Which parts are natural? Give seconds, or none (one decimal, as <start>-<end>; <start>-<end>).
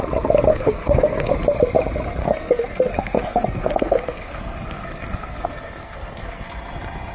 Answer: 0.0-0.5; 1.3-2.2; 6.5-7.1